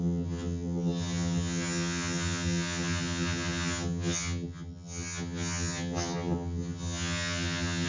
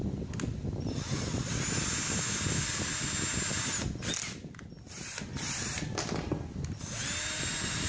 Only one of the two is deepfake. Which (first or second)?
first